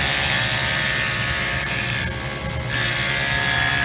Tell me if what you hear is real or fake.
real